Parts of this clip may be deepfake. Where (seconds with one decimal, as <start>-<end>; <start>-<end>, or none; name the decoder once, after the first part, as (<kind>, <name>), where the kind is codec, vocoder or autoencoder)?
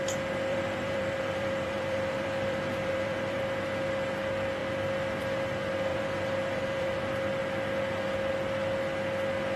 0.5-3.4 (vocoder, BigVGAN v2); 5.9-6.9